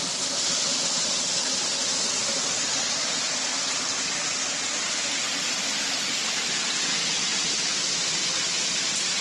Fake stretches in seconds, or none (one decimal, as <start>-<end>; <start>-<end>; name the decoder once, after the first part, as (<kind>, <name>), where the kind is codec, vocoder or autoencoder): none